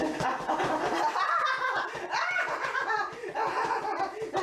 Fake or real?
fake